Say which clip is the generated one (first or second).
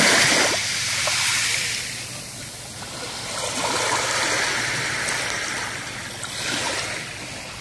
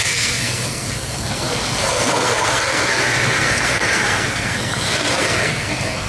second